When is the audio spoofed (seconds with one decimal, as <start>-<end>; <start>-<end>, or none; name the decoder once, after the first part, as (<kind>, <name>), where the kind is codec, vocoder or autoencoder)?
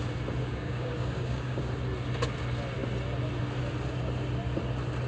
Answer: 0.4-1.7 (codec, DAC)